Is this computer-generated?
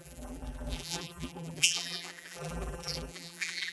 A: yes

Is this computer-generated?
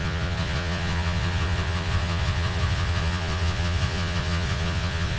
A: yes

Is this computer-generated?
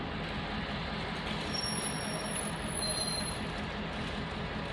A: no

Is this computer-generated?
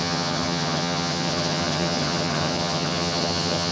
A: yes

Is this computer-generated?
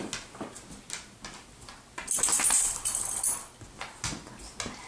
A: no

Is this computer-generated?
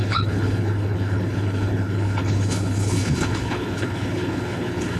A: yes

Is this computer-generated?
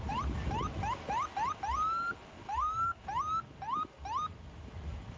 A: no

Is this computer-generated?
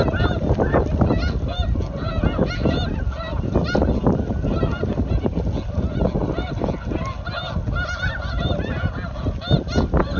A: no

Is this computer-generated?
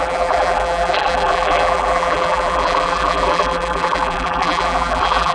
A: yes